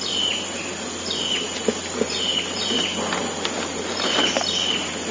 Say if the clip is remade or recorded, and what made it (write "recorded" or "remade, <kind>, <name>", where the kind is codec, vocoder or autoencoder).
recorded